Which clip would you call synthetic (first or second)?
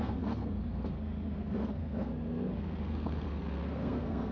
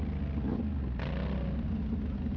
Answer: first